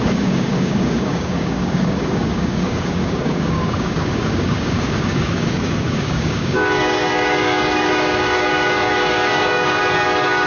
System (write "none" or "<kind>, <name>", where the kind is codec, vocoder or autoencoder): codec, DAC